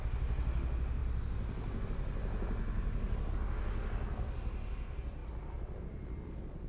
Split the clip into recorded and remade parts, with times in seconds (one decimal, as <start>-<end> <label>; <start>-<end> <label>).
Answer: 0.0-6.7 recorded